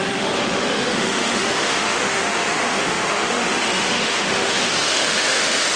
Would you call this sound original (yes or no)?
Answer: no